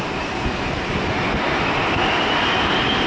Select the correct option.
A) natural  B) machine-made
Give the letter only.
B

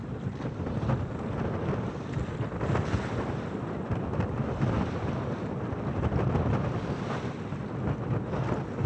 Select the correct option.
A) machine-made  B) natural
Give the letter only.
B